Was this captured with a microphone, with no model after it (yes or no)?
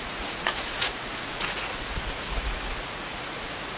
no